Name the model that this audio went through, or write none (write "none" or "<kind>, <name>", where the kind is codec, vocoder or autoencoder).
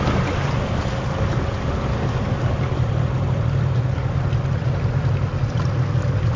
none